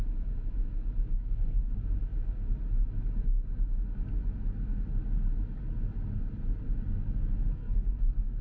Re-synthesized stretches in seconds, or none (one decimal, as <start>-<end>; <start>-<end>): 1.1-1.6; 7.5-8.4